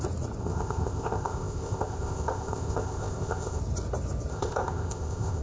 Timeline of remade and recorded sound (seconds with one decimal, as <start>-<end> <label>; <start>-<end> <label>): 0.0-0.4 recorded; 0.4-3.6 remade; 3.6-4.3 recorded; 4.3-5.4 remade